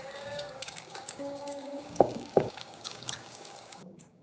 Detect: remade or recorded remade